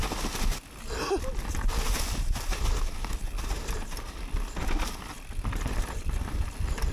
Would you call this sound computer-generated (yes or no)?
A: no